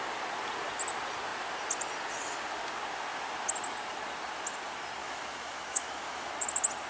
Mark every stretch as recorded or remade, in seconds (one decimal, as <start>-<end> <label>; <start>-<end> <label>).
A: 0.0-5.0 recorded; 5.0-6.3 remade; 6.3-6.9 recorded